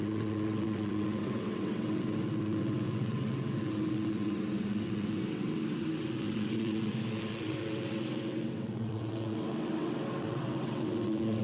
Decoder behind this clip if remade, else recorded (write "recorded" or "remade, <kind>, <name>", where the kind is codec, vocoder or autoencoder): remade, vocoder, WaveNeXt